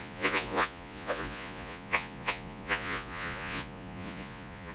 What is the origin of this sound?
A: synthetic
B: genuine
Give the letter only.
A